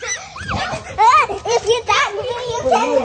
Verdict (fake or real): fake